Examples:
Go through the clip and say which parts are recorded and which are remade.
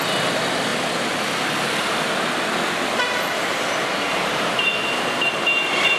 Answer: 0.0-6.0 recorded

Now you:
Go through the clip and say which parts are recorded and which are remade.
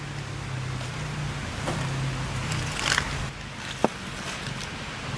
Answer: 0.0-5.2 recorded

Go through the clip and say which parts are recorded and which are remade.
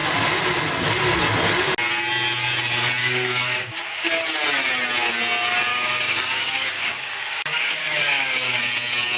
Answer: 0.0-3.0 recorded; 3.0-4.1 remade; 4.1-5.7 recorded; 5.7-8.6 remade; 8.6-9.2 recorded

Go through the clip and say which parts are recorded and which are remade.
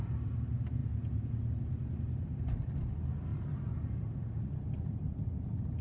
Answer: 0.0-5.8 recorded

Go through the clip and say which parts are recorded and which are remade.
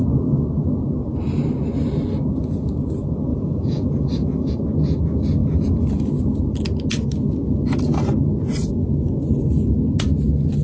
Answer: 0.0-3.3 recorded; 3.3-4.5 remade; 4.5-5.4 recorded; 5.4-6.1 remade; 6.1-10.6 recorded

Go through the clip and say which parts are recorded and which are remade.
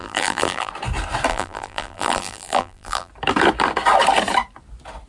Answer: 0.0-0.7 remade; 0.7-1.3 recorded; 1.3-3.1 remade; 3.1-5.1 recorded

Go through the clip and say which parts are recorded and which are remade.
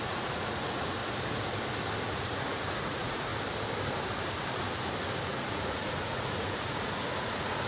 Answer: 0.0-1.0 remade; 1.0-2.0 recorded; 2.0-3.3 remade; 3.3-5.3 recorded; 5.3-7.7 remade